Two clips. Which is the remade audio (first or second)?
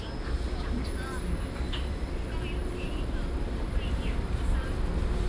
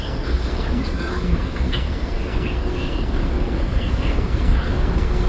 second